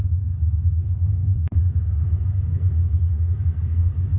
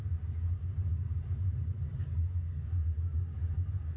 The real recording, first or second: second